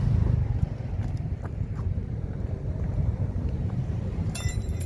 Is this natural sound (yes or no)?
no